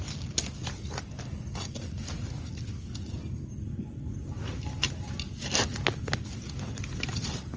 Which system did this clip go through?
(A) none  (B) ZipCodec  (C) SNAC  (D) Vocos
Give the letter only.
A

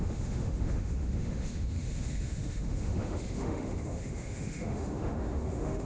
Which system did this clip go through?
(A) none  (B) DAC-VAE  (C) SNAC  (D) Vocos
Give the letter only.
B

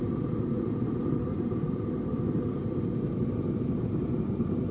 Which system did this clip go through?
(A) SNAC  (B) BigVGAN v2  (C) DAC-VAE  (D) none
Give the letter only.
D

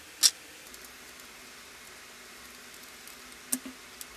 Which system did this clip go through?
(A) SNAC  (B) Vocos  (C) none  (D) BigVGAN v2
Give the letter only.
C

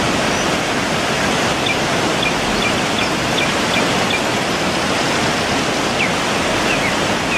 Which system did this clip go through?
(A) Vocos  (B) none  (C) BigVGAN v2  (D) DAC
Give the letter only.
B